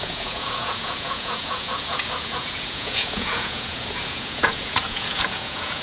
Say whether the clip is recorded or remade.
remade